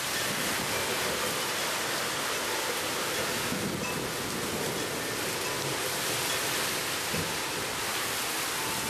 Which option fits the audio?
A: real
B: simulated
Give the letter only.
A